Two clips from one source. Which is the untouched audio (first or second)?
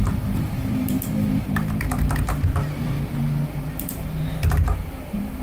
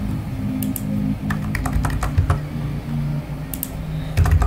second